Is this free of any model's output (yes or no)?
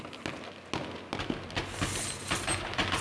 yes